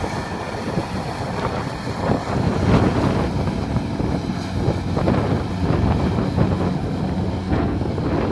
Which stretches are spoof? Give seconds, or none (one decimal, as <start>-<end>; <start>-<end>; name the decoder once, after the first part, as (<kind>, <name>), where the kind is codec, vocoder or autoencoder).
7.4-7.9 (codec, SNAC)